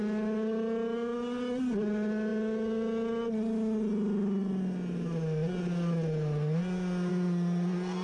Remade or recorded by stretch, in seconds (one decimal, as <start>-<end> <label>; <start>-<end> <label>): 0.0-8.0 recorded